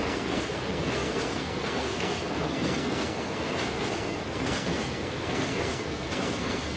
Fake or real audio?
fake